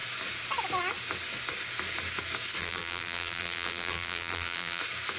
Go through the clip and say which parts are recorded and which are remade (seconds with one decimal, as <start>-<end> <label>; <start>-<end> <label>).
0.0-2.6 recorded; 2.6-4.8 remade; 4.8-5.2 recorded